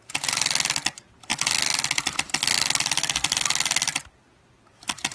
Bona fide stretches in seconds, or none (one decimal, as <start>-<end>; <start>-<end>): 0.0-5.1